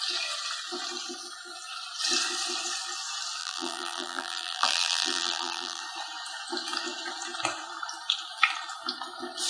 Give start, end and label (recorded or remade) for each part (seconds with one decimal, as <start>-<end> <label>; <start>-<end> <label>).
0.0-3.4 recorded; 3.4-5.8 remade; 5.8-9.5 recorded